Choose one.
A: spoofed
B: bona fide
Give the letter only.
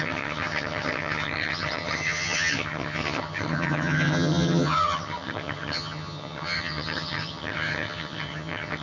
A